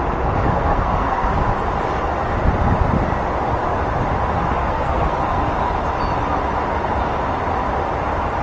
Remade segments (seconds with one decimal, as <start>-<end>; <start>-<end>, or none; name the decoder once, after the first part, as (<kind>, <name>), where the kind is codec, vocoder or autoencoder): 0.4-1.3 (codec, SNAC); 4.6-5.4